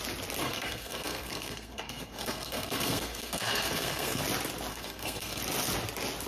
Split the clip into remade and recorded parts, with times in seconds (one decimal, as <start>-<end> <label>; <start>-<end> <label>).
0.0-0.4 recorded; 0.4-4.2 remade; 4.2-4.7 recorded; 4.7-5.4 remade; 5.4-6.3 recorded